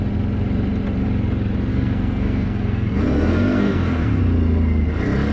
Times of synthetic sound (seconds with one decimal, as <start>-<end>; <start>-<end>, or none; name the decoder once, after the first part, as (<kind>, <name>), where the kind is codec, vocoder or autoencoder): 1.7-4.2 (codec, SNAC)